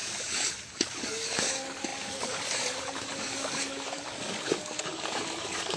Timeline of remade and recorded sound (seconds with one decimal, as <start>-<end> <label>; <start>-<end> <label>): 0.0-5.8 remade